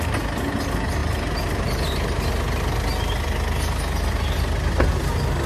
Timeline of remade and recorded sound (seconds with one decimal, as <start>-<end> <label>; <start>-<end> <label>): 0.0-5.5 recorded